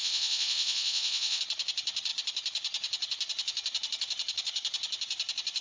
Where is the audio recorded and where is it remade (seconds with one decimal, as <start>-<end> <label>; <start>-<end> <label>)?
0.0-1.4 remade; 1.4-5.6 recorded